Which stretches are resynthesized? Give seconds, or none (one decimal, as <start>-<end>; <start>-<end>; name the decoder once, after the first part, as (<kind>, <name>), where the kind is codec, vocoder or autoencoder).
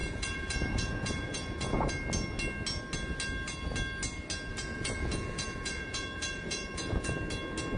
0.0-1.9 (vocoder, Vocos); 4.5-7.1